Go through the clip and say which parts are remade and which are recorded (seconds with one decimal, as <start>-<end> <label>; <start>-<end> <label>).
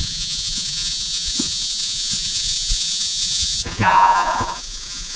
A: 0.0-5.2 remade